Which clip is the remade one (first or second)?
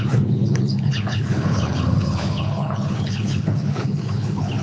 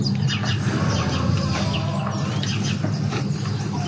first